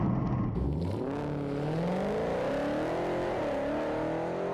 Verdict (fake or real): real